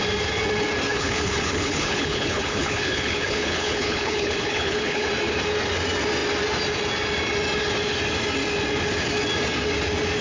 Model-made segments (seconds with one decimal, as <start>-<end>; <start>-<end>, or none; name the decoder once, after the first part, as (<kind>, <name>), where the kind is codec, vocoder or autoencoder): 0.9-5.1 (codec, HILCodec)